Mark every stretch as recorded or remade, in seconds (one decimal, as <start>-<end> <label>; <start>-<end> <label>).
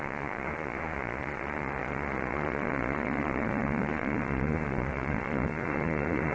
0.0-6.3 remade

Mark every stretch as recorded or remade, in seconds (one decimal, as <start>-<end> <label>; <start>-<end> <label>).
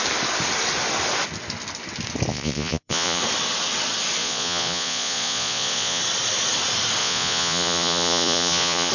0.0-2.3 recorded; 2.3-3.2 remade; 3.2-4.2 recorded; 4.2-6.0 remade; 6.0-7.0 recorded; 7.0-8.9 remade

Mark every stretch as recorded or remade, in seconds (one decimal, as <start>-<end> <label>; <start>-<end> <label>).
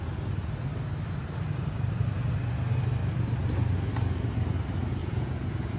0.0-5.0 recorded; 5.0-5.8 remade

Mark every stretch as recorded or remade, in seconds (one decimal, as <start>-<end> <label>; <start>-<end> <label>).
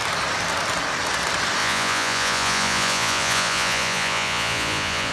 0.0-1.6 recorded; 1.6-5.1 remade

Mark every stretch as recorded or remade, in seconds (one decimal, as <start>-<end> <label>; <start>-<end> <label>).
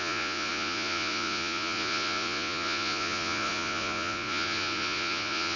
0.0-5.6 remade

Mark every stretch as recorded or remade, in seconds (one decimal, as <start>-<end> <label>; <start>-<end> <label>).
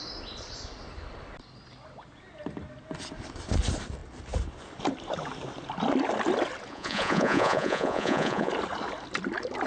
0.0-6.7 recorded; 6.7-8.5 remade; 8.5-9.7 recorded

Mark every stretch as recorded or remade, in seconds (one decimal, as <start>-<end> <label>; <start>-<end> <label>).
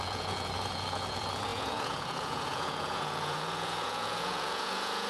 0.0-5.1 remade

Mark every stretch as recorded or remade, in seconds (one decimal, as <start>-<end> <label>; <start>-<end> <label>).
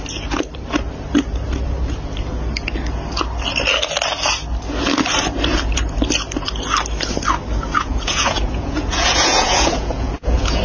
0.0-7.7 recorded; 7.7-10.6 remade